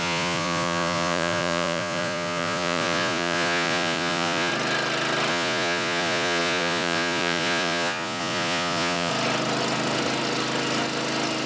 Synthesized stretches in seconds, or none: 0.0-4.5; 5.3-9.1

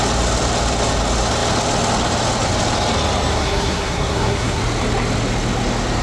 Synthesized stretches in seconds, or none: 3.3-4.6

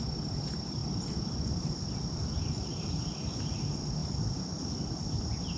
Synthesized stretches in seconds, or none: none